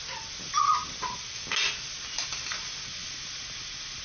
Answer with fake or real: real